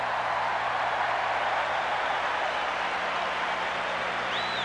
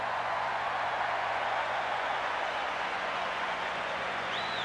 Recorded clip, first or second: first